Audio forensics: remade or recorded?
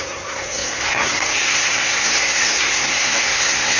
remade